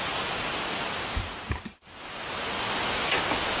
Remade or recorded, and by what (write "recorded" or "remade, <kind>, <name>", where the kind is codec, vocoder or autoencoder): recorded